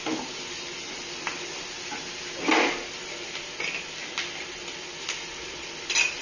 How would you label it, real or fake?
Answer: real